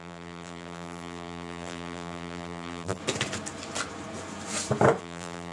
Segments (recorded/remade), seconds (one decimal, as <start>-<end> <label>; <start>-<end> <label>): 0.0-3.0 remade; 3.0-5.0 recorded; 5.0-5.5 remade